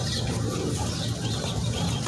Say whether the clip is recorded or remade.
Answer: recorded